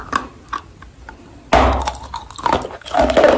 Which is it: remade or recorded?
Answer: recorded